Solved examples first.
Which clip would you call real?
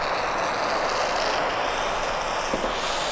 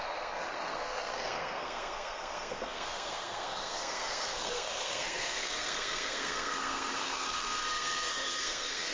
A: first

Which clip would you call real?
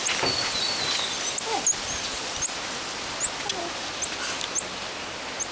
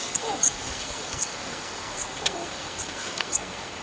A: first